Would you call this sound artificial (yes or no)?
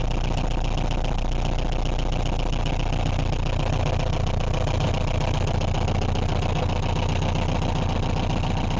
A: no